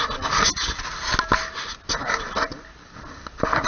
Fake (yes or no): no